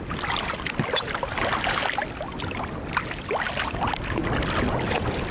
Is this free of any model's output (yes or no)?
yes